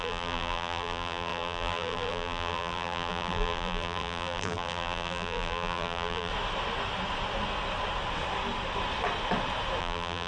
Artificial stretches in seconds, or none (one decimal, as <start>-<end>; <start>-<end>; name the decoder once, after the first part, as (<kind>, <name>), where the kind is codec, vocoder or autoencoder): 0.0-6.3 (vocoder, BigVGAN v2); 9.8-10.3